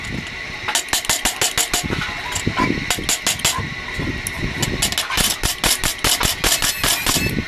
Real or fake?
real